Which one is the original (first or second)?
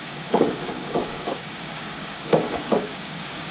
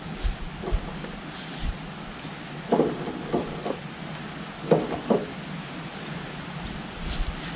second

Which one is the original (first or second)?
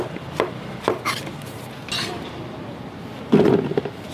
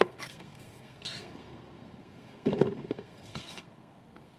first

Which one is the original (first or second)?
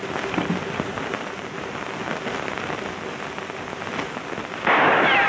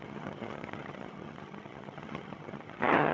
first